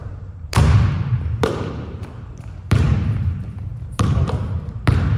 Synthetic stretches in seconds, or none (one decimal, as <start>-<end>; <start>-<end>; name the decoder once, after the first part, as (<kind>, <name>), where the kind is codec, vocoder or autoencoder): 0.0-5.2 (vocoder, BigVGAN v2)